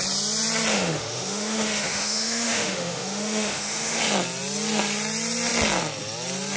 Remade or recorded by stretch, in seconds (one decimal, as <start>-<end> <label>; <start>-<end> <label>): 0.0-0.7 recorded; 0.7-4.0 remade; 4.0-6.6 recorded